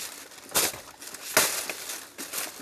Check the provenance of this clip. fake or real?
real